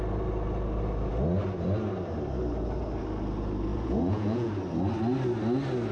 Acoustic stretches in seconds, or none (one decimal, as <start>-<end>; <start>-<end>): 0.0-3.7; 4.5-5.9